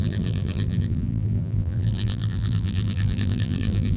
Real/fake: fake